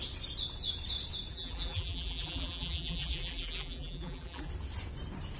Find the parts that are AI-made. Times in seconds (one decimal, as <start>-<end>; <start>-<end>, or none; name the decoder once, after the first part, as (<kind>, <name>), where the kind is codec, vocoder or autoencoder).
1.3-4.5 (vocoder, BigVGAN v2)